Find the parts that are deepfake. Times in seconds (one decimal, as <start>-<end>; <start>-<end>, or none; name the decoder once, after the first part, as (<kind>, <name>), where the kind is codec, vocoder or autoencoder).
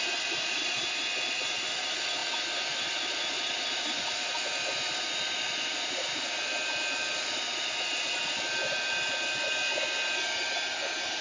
none